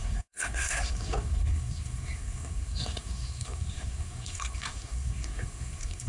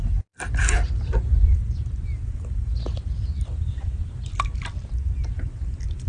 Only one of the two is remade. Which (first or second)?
first